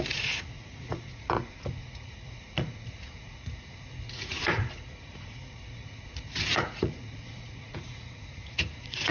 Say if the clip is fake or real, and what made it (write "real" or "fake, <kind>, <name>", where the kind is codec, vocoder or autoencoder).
fake, vocoder, Vocos